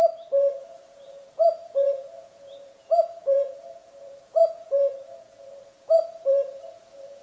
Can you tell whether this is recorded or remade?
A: remade